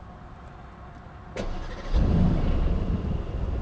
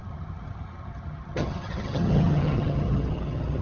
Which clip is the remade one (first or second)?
second